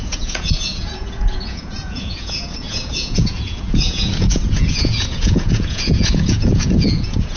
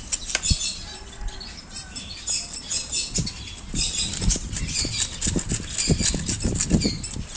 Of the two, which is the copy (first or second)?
first